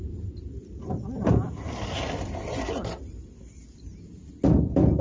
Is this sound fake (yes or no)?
no